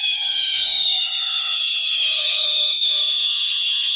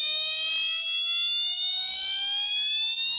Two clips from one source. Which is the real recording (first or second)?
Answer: second